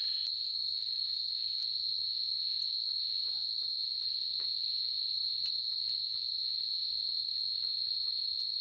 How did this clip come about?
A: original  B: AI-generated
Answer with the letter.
B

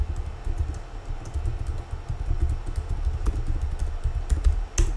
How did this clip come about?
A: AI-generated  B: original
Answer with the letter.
B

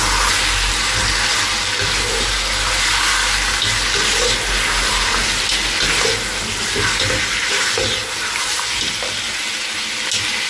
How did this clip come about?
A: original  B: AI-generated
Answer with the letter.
A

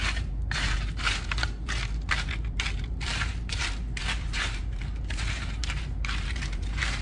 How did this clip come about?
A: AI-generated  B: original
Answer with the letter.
A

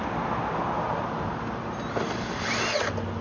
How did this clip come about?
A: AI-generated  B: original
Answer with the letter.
B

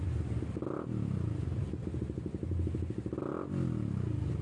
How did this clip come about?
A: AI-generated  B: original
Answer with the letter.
B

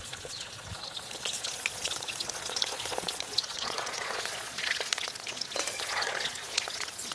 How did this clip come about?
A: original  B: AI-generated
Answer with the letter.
B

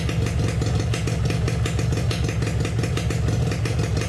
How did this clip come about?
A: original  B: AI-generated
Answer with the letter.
A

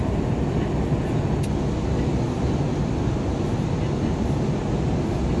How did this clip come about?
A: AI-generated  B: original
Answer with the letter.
B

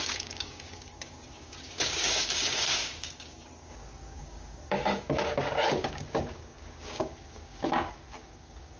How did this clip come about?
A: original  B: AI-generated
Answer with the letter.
B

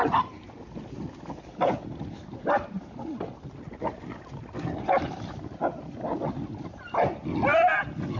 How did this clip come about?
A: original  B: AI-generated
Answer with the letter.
A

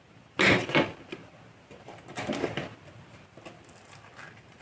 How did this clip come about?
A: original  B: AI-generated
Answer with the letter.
A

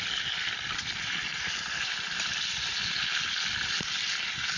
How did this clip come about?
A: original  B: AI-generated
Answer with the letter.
A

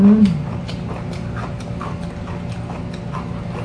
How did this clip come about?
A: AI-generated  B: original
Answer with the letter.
B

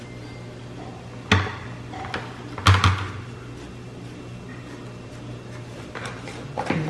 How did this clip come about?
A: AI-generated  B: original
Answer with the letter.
B